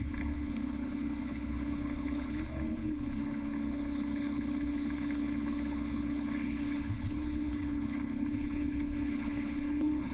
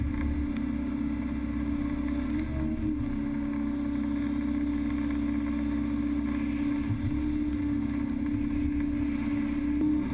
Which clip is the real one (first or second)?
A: second